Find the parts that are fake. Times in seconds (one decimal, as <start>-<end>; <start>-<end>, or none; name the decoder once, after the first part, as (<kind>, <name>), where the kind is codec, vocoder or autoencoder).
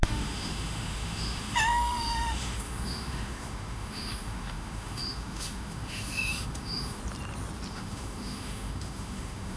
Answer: 0.0-7.0 (autoencoder, DAC-VAE); 7.7-9.6